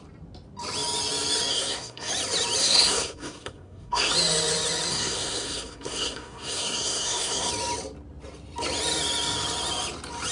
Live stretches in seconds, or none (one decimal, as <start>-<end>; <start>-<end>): 0.0-1.5; 2.1-2.6; 4.1-4.9; 7.5-10.3